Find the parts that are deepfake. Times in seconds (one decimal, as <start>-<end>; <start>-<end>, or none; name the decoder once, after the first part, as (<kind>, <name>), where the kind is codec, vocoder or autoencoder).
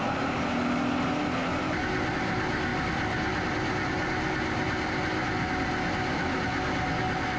none